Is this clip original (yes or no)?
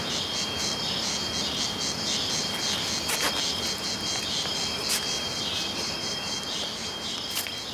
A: yes